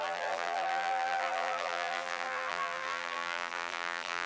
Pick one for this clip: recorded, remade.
remade